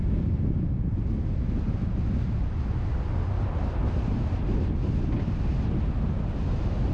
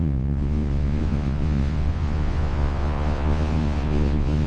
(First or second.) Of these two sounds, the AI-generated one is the second